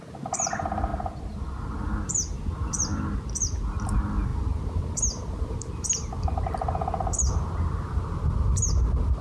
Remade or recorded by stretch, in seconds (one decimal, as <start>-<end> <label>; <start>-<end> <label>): 0.0-9.2 recorded